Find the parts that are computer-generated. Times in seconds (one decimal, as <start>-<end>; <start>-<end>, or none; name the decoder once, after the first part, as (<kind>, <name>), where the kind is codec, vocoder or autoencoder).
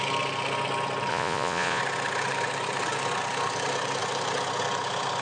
1.1-1.8 (vocoder, Vocos)